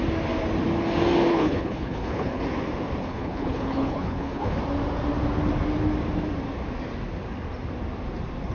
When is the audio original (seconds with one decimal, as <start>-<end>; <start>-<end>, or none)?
0.0-1.3; 2.4-3.0; 4.6-8.5